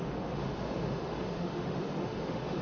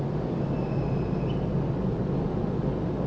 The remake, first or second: first